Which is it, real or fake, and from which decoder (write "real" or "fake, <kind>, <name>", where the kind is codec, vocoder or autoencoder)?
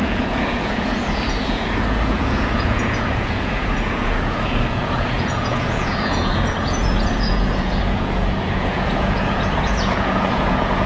fake, vocoder, Vocos